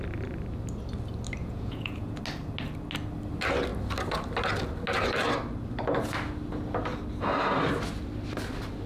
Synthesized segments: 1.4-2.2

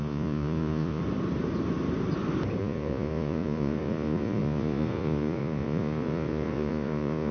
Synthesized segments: 0.0-1.0; 2.6-7.3

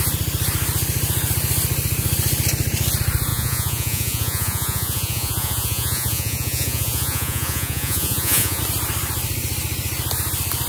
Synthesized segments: 3.3-8.6